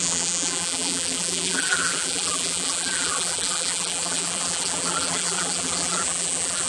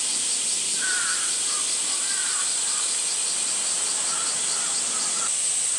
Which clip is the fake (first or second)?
first